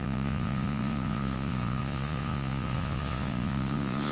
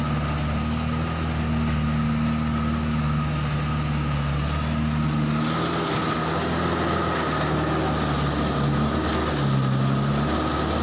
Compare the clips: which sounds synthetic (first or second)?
first